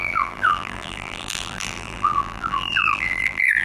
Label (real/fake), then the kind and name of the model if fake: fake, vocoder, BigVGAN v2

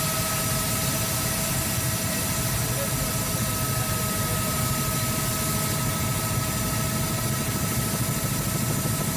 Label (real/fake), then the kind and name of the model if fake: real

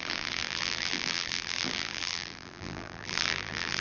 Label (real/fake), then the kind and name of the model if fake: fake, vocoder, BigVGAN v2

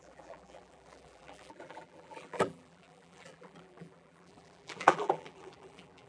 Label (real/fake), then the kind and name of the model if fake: fake, vocoder, BigVGAN v2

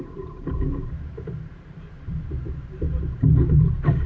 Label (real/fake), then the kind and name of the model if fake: fake, vocoder, BigVGAN v2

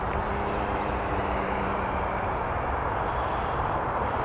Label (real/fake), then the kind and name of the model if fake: fake, vocoder, BigVGAN v2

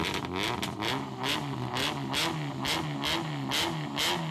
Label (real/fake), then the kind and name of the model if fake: real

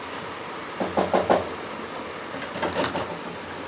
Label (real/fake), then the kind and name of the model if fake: real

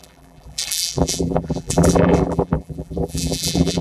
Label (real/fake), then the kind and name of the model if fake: fake, vocoder, BigVGAN v2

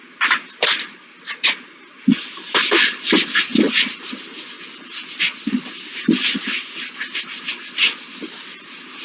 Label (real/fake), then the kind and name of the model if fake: real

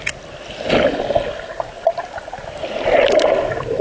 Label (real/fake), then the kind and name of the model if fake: real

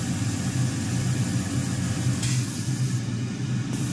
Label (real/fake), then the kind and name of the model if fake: real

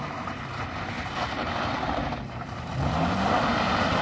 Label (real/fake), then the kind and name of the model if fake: fake, vocoder, BigVGAN v2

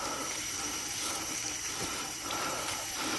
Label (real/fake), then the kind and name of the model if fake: fake, vocoder, BigVGAN v2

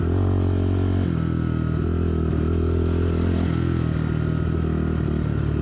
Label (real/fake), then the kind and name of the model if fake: real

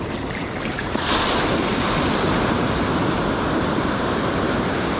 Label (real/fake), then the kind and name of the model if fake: fake, vocoder, BigVGAN v2